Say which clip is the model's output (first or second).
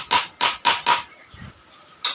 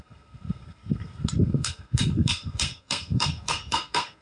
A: second